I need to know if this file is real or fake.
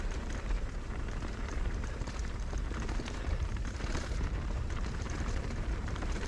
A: fake